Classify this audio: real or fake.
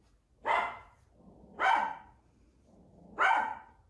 real